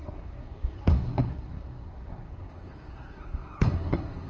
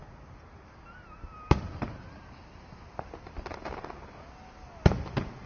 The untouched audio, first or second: second